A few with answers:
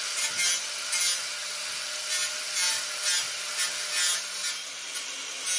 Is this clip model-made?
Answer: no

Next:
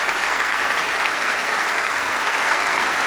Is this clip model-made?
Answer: yes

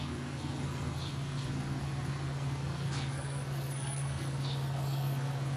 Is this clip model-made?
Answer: yes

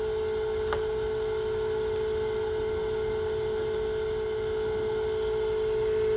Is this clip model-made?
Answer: no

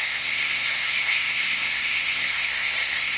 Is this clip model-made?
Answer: yes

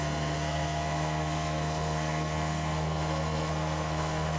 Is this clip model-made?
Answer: yes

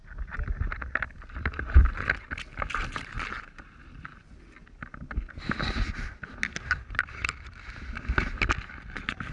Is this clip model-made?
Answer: no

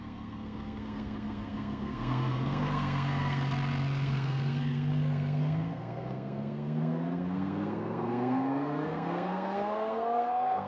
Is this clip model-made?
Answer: yes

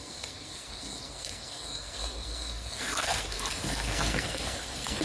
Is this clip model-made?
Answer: yes